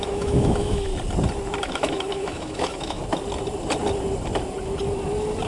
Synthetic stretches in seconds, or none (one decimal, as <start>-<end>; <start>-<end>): 0.0-0.9; 1.6-3.0